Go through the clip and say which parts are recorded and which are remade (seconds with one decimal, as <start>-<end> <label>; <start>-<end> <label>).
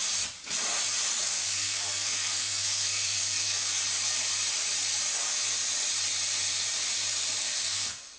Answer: 0.0-1.2 recorded; 1.2-3.8 remade; 3.8-7.4 recorded; 7.4-8.2 remade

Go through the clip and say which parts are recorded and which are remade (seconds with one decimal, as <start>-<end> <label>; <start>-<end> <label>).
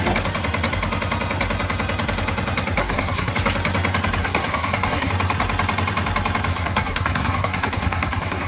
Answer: 0.0-2.8 recorded; 2.8-3.3 remade; 3.3-4.2 recorded; 4.2-5.1 remade; 5.1-6.5 recorded; 6.5-8.5 remade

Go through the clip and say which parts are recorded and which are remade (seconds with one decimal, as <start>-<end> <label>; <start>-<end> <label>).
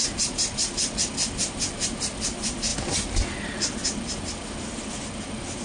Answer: 0.0-5.6 recorded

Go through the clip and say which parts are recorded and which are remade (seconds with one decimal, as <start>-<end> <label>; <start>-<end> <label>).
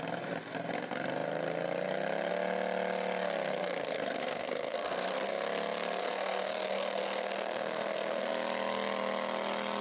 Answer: 0.0-3.5 recorded; 3.5-5.3 remade; 5.3-6.0 recorded; 6.0-8.3 remade; 8.3-9.8 recorded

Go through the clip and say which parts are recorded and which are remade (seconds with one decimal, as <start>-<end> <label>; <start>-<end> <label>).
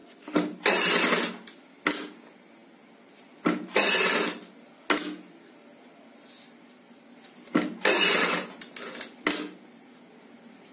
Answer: 0.0-10.7 recorded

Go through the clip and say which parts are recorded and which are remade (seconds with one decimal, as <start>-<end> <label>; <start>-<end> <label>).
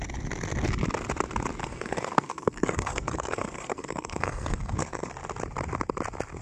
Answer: 0.0-1.6 recorded; 1.6-5.1 remade; 5.1-6.4 recorded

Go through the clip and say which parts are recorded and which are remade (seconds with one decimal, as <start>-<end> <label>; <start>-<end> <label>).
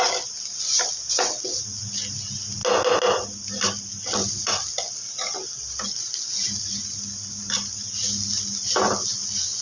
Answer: 0.0-9.6 recorded